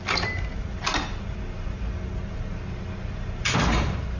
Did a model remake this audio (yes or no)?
no